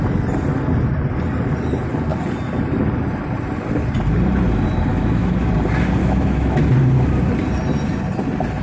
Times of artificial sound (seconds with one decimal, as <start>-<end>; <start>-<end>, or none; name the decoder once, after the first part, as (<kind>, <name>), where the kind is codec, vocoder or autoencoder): 4.9-5.5 (autoencoder, DAC-VAE); 6.0-6.6